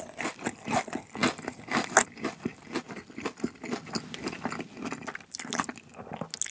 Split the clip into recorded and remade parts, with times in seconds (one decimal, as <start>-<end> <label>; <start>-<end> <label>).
0.0-6.5 recorded